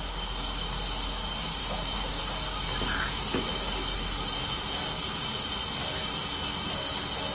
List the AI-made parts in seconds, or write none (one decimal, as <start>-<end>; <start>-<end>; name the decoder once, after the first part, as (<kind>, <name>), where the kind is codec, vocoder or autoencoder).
1.6-2.2 (autoencoder, DAC-VAE)